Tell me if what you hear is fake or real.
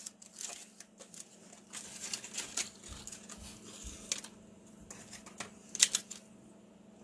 real